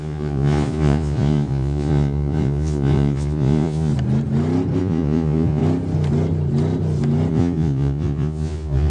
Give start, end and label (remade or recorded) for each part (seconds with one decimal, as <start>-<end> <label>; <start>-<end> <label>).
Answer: 0.0-3.9 remade; 3.9-4.8 recorded; 4.8-5.6 remade; 5.6-7.3 recorded; 7.3-8.9 remade